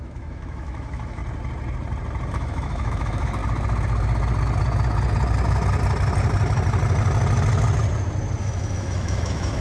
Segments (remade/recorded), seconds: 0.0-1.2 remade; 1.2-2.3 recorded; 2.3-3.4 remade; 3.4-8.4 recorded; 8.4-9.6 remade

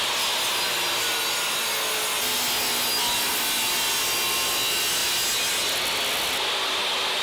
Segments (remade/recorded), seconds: 0.0-7.2 recorded